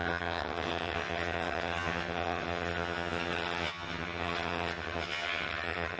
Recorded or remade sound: remade